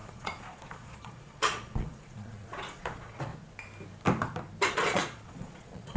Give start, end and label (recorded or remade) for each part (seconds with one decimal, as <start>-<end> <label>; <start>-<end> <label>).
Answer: 0.0-3.3 remade; 3.3-4.7 recorded; 4.7-6.0 remade

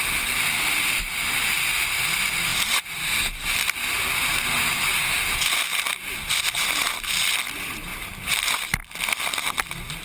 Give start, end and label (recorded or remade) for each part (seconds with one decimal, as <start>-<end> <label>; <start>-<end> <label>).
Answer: 0.0-2.5 recorded; 2.5-4.4 remade; 4.4-7.9 recorded; 7.9-8.4 remade; 8.4-10.0 recorded